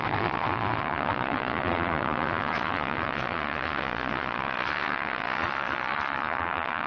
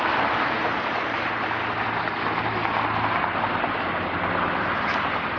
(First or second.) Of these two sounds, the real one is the second